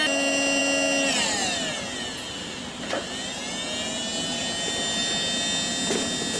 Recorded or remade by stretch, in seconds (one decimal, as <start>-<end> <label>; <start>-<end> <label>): 0.0-6.4 recorded